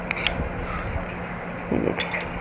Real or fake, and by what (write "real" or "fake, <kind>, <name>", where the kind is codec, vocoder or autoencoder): real